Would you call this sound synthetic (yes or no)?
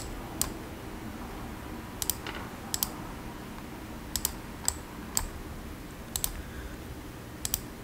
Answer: no